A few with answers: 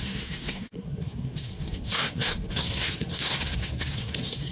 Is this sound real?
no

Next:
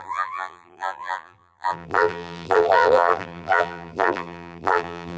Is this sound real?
no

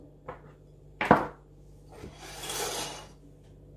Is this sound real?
yes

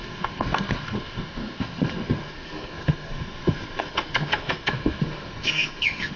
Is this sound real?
no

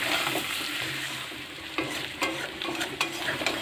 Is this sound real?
no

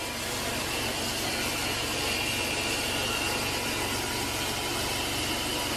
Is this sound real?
yes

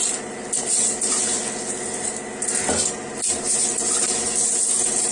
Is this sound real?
yes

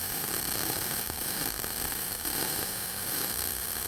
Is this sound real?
no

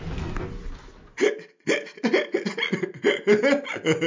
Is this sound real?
yes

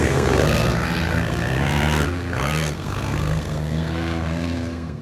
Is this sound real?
no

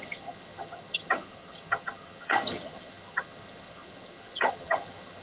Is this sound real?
no